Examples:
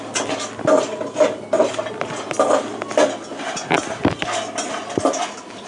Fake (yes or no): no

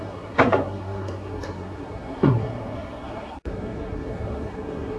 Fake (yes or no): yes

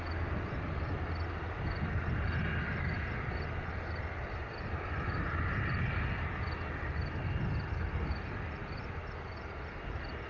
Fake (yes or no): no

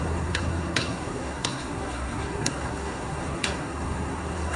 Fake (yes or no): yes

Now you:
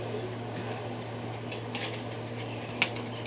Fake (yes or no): no